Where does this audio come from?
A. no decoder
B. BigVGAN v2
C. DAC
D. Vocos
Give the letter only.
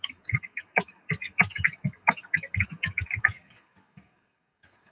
C